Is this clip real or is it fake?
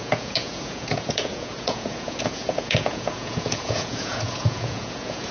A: fake